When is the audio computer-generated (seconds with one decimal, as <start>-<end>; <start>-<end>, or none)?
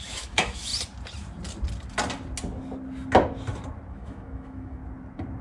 0.0-0.7; 3.9-4.8